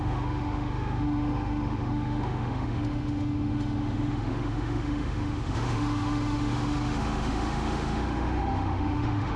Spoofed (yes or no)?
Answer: yes